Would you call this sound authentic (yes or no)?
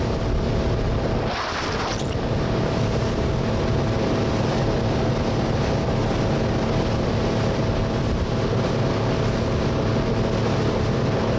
yes